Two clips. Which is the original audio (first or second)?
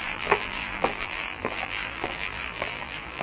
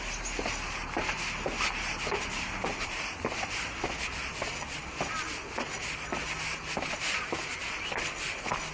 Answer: second